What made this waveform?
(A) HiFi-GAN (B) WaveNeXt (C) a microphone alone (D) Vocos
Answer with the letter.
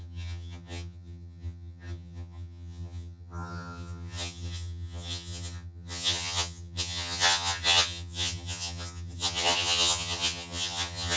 A